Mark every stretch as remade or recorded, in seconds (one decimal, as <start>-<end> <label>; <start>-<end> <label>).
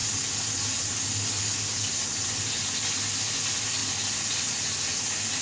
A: 0.0-5.4 recorded